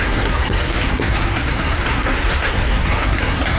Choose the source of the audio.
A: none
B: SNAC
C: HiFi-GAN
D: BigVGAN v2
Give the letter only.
B